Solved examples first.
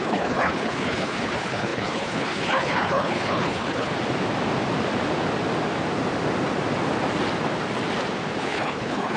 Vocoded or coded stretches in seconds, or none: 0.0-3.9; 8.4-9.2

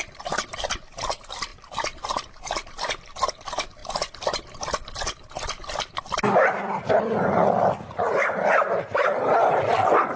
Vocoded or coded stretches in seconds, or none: 0.0-1.5; 3.3-10.2

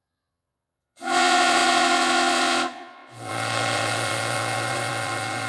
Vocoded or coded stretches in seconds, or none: 0.0-5.5